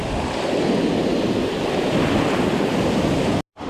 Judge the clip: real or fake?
real